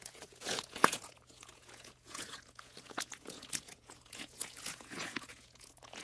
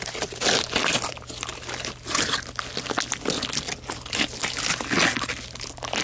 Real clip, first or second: second